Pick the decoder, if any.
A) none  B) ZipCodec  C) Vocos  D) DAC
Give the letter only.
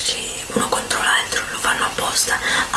A